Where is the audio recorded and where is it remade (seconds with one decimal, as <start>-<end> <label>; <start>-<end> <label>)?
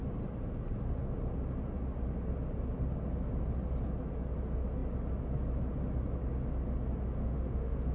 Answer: 0.0-7.2 recorded; 7.2-7.9 remade